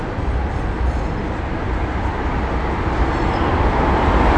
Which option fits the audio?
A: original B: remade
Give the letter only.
A